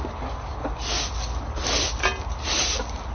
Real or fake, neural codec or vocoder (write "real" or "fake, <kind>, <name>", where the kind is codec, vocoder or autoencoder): real